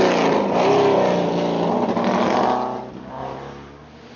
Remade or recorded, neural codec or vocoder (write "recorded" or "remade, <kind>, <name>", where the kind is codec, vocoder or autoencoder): recorded